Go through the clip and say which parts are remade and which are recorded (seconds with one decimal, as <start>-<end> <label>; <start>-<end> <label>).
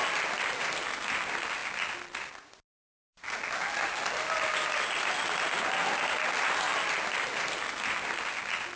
0.0-8.8 recorded